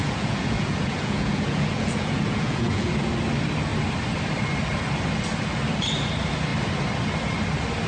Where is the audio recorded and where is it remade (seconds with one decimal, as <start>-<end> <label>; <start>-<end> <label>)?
0.0-3.1 remade; 3.1-7.9 recorded